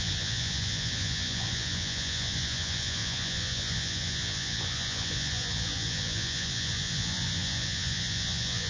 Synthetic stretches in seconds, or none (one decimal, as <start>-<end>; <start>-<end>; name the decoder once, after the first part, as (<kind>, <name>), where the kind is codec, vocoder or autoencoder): 0.0-8.7 (vocoder, Vocos)